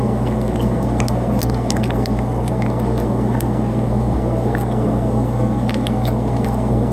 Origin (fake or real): fake